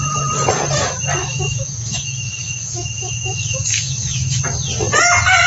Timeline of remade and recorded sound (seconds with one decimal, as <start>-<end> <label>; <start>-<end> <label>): 0.0-1.2 recorded; 1.2-4.4 remade; 4.4-5.5 recorded